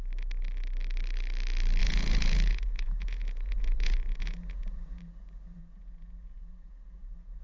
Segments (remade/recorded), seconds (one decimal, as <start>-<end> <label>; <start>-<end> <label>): 0.0-1.8 recorded; 1.8-5.0 remade; 5.0-5.6 recorded; 5.6-7.4 remade